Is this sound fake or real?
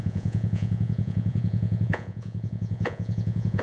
fake